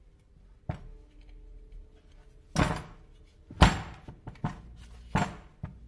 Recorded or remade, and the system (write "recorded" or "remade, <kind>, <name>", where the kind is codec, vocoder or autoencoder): recorded